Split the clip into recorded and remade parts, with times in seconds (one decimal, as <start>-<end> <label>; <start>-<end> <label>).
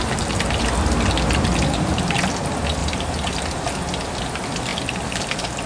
0.0-0.6 remade; 0.6-4.7 recorded; 4.7-5.7 remade